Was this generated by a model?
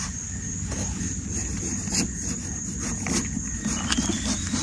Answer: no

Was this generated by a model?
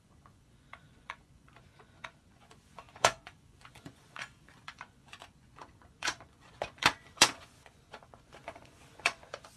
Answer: yes